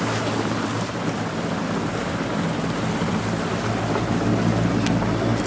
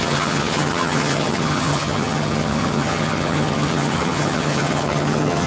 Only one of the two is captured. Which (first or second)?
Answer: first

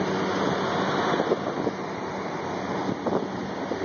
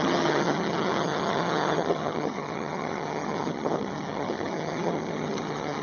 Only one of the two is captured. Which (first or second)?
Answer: first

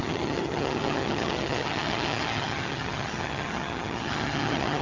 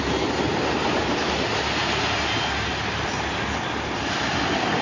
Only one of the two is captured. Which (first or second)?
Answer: second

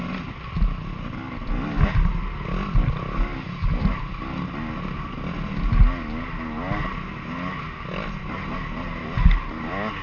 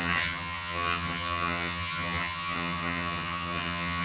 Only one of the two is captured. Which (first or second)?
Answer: first